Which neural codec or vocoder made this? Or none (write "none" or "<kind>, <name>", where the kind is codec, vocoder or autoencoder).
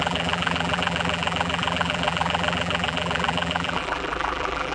vocoder, BigVGAN v2